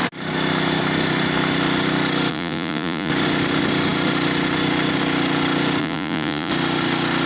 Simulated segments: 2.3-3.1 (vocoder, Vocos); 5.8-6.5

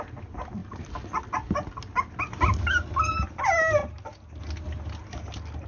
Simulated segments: none

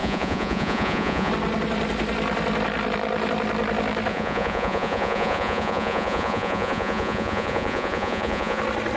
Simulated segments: 0.0-1.3 (vocoder, Vocos); 4.1-8.6

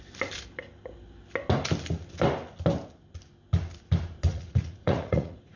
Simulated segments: 4.3-5.6 (vocoder, Vocos)